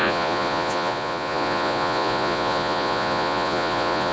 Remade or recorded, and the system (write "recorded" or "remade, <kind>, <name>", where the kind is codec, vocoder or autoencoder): remade, vocoder, Vocos